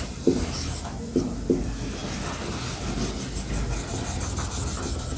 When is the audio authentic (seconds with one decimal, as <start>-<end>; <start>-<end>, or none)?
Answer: 0.0-5.2